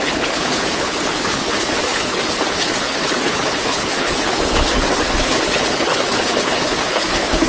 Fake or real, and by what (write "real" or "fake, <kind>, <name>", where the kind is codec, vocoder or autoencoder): fake, codec, HILCodec